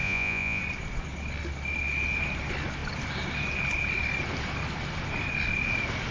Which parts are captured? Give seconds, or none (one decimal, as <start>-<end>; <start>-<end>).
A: 0.6-6.1